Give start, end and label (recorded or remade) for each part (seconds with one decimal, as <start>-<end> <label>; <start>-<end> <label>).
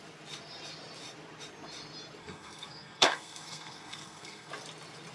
0.0-2.2 recorded; 2.2-4.5 remade; 4.5-5.1 recorded